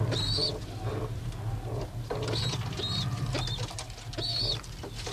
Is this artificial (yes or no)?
no